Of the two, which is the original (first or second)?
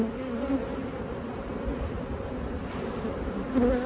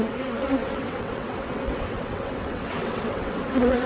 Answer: first